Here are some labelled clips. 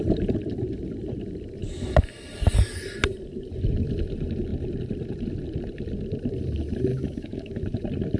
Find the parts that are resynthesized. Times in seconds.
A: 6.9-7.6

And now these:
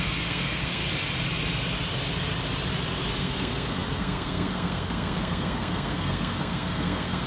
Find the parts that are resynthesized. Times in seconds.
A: 0.0-0.8; 3.2-7.3

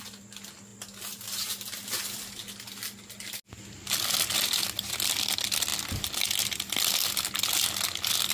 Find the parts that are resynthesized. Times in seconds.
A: none

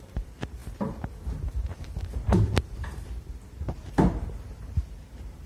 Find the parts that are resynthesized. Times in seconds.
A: 0.0-5.5

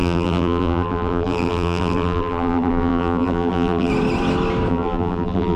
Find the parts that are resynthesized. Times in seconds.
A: 0.0-3.9; 4.7-5.6